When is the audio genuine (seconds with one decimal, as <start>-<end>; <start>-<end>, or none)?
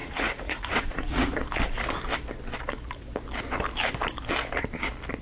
1.3-5.2